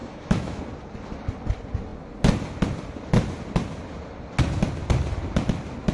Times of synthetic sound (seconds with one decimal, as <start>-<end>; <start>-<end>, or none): 0.0-0.6